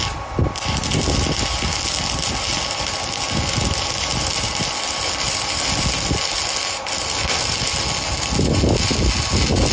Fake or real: real